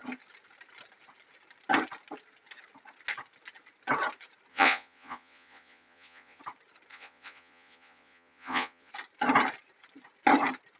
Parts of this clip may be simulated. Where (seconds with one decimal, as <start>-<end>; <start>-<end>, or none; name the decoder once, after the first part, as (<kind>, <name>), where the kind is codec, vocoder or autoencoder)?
4.5-6.4 (vocoder, Vocos); 6.9-8.9